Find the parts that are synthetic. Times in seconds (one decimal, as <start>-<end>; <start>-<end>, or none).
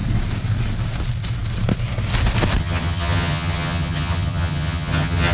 2.6-5.3